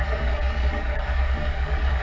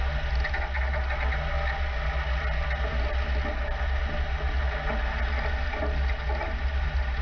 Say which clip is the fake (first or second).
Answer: first